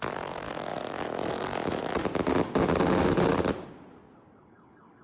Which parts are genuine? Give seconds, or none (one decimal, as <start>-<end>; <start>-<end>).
0.0-5.0